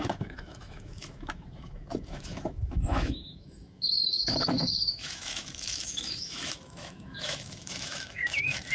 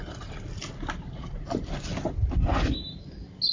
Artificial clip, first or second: first